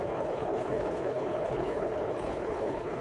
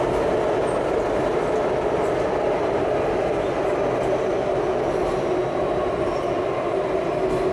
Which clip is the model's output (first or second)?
first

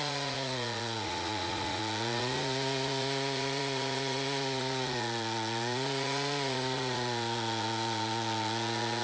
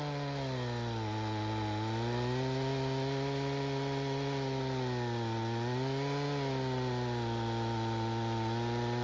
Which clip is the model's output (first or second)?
first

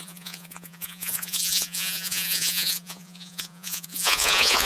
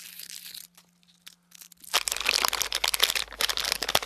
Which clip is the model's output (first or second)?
first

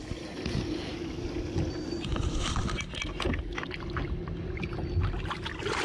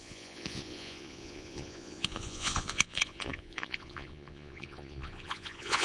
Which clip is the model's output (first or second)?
second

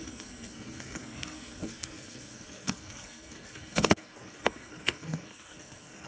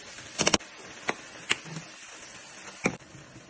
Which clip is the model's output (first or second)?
first